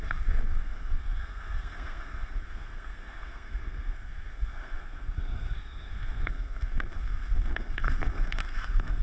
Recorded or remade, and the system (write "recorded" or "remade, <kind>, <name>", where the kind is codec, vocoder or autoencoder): remade, codec, SNAC